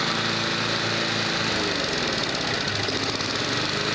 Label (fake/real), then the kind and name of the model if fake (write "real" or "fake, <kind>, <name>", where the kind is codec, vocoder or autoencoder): real